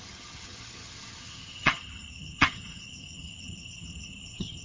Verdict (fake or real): fake